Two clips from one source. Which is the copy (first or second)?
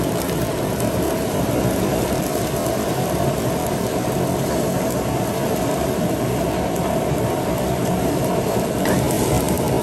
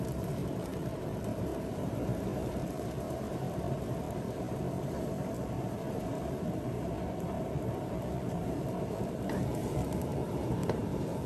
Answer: second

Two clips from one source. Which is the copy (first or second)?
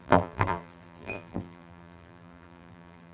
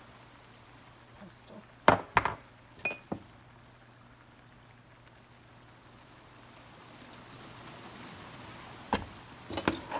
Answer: first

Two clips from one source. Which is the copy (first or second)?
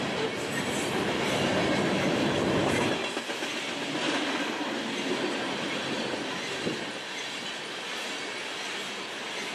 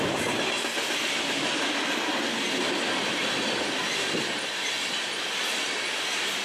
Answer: second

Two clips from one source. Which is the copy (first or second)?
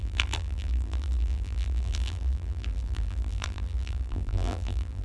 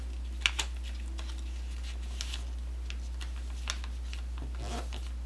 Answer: first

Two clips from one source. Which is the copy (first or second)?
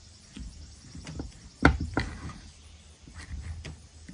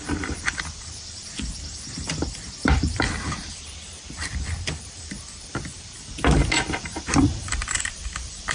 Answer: second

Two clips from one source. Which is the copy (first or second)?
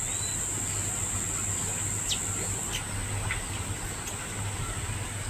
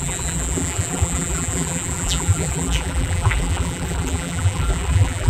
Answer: second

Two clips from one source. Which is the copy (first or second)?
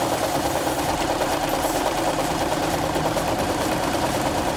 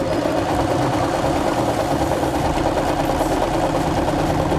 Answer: first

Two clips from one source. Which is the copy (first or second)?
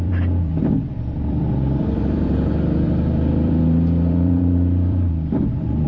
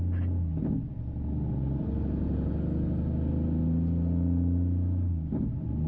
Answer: first